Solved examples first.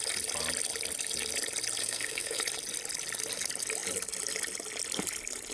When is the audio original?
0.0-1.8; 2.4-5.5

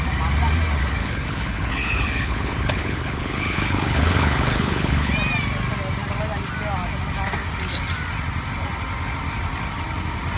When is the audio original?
0.0-1.0; 5.1-10.4

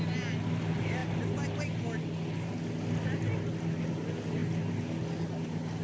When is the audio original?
0.0-5.8

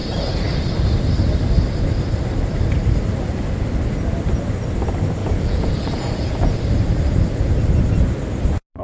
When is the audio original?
0.0-5.2; 6.6-8.8